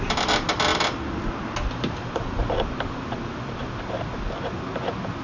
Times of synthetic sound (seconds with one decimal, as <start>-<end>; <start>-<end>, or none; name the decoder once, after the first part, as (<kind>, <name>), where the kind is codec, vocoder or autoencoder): none